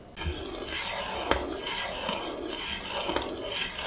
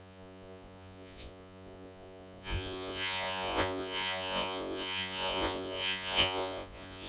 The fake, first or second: second